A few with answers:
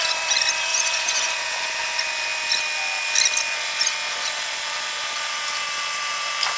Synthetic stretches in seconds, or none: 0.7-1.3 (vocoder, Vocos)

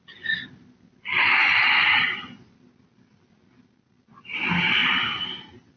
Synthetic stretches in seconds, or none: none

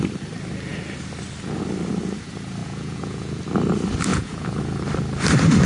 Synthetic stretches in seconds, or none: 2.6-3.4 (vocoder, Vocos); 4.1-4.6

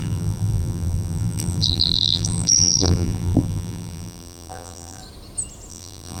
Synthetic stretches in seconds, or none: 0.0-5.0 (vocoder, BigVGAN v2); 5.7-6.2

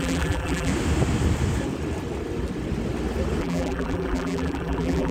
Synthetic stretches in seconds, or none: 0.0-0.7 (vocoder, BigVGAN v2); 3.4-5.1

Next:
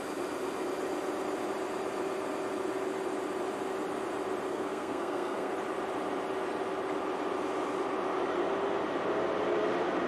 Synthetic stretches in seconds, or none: 4.5-5.5 (codec, SNAC)

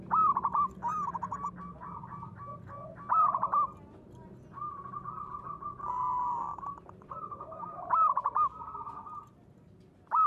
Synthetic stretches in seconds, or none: 6.5-7.7 (vocoder, BigVGAN v2)

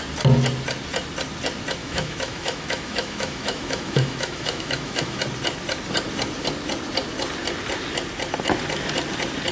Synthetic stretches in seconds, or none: 1.8-5.2 (autoencoder, DAC-VAE)